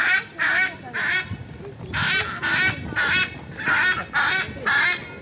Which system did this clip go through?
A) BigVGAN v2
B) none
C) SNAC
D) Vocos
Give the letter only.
B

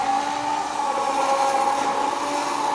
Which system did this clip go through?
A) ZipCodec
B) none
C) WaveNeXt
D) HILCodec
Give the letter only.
B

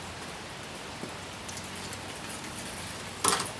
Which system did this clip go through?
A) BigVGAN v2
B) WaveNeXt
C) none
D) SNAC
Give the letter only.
C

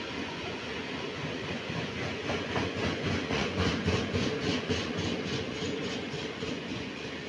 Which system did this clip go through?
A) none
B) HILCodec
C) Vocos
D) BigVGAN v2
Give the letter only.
C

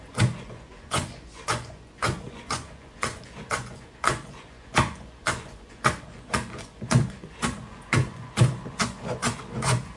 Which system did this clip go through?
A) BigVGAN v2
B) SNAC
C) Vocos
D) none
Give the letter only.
C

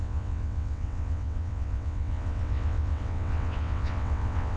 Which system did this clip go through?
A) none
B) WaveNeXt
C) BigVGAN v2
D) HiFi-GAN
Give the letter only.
B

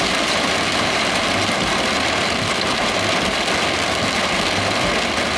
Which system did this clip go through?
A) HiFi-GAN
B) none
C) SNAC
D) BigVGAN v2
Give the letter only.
B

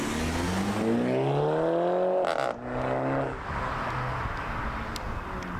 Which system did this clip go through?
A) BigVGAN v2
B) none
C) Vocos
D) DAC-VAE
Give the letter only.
B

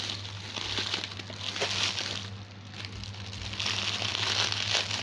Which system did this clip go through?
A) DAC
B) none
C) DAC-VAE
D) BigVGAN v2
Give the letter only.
B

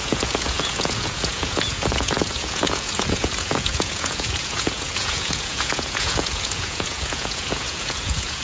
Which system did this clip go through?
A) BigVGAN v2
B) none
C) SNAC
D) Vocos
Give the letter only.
D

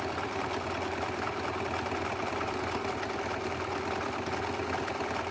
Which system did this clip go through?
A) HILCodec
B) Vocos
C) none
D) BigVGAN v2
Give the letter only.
C